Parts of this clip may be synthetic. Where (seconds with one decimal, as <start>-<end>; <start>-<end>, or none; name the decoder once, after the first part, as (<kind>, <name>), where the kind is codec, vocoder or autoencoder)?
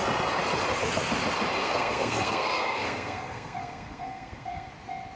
1.6-4.7 (codec, SNAC)